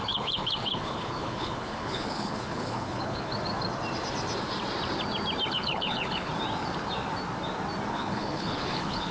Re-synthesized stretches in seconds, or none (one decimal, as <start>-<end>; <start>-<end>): 0.0-3.3; 5.5-6.3; 7.9-9.1